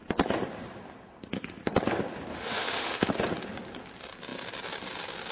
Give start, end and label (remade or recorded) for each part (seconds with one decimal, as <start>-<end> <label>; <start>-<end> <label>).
0.0-2.3 recorded; 2.3-3.1 remade; 3.1-5.3 recorded